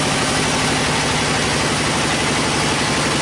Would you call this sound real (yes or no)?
yes